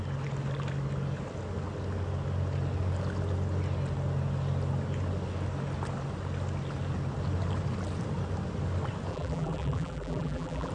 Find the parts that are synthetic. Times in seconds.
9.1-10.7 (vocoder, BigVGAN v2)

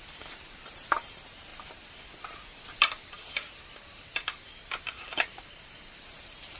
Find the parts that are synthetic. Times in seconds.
0.0-6.6 (vocoder, BigVGAN v2)

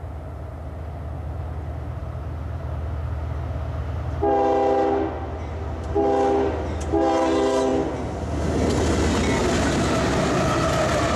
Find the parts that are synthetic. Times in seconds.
none